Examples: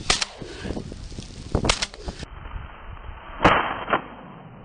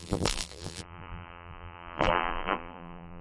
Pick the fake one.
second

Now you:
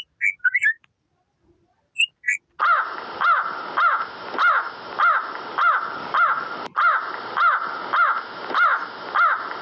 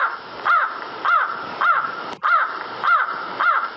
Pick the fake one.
second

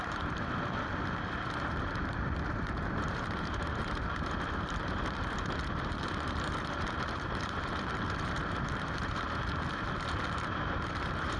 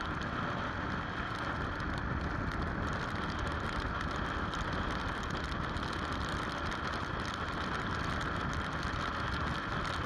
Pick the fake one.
first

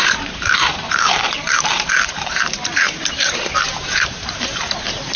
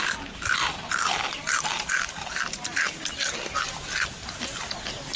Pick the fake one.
first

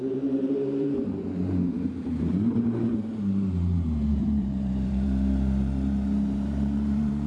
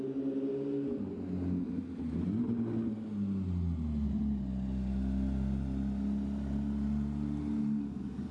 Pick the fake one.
first